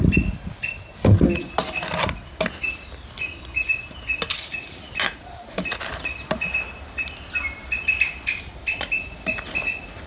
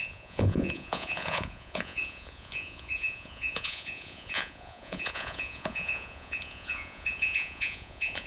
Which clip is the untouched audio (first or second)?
first